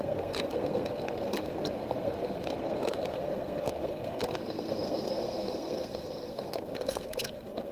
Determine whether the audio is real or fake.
fake